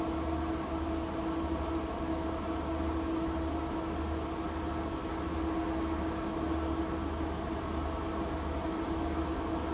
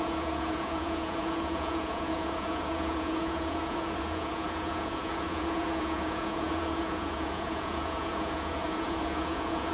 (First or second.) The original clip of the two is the first